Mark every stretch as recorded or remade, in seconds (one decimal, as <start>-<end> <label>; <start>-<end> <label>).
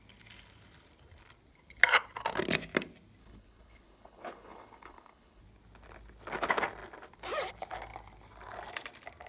0.0-3.2 recorded; 3.2-5.4 remade; 5.4-9.3 recorded